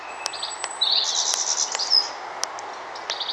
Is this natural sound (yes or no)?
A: yes